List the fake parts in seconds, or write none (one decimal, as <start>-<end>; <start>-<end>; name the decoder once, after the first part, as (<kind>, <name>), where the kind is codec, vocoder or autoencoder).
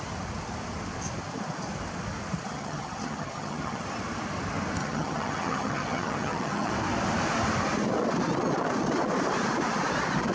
2.5-3.8 (vocoder, HiFi-GAN); 4.8-6.7